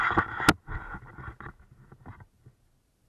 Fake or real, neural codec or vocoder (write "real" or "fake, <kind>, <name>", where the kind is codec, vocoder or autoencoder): real